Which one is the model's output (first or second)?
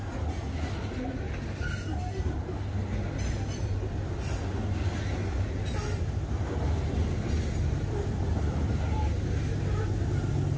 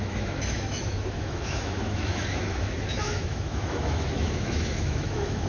second